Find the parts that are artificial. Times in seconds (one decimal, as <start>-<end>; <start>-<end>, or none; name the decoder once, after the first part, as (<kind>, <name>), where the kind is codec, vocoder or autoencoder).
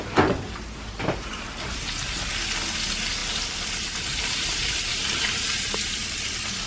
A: none